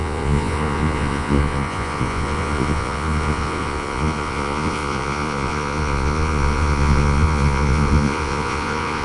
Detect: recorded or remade remade